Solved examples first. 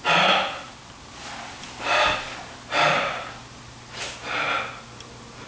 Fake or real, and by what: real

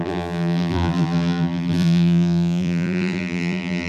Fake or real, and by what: fake, vocoder, BigVGAN v2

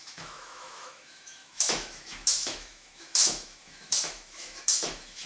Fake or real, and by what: fake, autoencoder, DAC-VAE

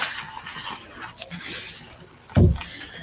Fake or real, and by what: real